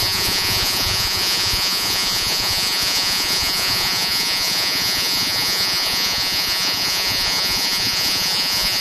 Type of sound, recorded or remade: remade